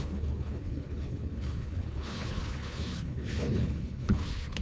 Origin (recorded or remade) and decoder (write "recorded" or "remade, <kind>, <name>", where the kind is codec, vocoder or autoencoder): remade, codec, HILCodec